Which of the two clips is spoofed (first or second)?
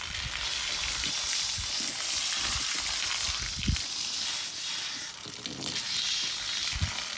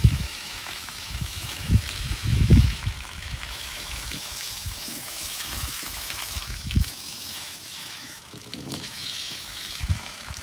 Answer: second